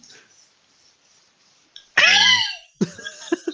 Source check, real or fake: real